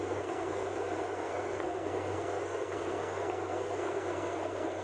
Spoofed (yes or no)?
yes